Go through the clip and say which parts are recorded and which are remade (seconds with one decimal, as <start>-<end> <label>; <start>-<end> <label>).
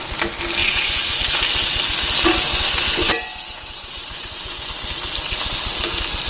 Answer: 0.0-0.6 recorded; 0.6-1.2 remade; 1.2-2.5 recorded; 2.5-4.7 remade; 4.7-6.3 recorded